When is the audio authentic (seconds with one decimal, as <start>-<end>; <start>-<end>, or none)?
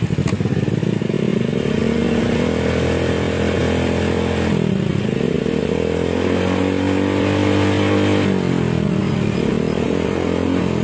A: 0.0-10.8